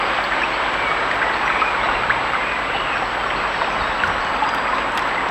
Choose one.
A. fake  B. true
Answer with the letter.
B